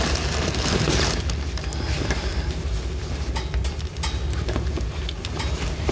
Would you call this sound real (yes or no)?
yes